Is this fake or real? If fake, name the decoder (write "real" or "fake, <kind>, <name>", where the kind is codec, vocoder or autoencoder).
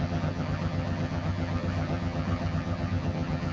fake, vocoder, HiFi-GAN